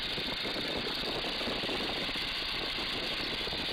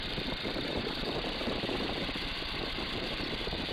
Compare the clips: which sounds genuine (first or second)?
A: first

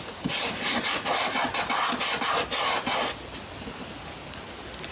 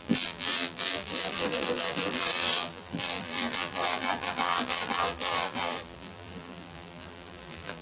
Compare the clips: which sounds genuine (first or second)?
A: first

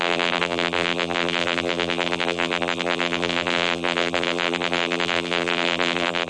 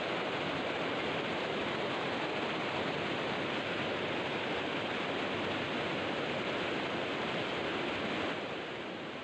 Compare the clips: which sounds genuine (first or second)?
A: second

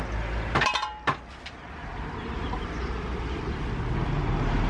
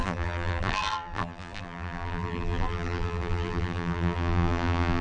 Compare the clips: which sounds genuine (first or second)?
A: first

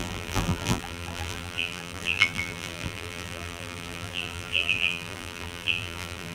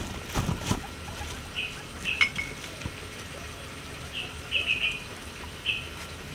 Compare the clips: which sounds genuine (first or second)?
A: second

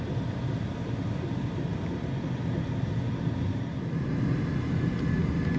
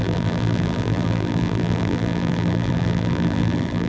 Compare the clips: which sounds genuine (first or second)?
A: first